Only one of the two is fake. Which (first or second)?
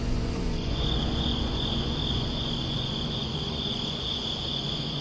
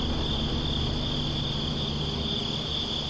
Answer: first